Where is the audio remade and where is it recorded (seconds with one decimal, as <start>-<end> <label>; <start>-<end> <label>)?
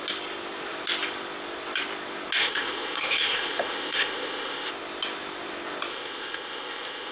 0.0-2.4 recorded; 2.4-4.7 remade; 4.7-5.9 recorded; 5.9-7.1 remade